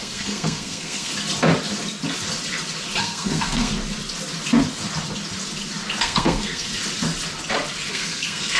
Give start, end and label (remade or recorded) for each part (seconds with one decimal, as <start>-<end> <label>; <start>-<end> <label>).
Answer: 0.0-1.1 remade; 1.1-3.0 recorded; 3.0-3.7 remade; 3.7-6.0 recorded; 6.0-6.7 remade; 6.7-7.9 recorded; 7.9-8.6 remade